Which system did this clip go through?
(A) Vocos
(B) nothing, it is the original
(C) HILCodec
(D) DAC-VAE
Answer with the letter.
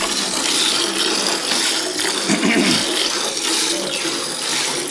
B